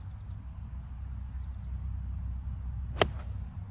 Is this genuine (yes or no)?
yes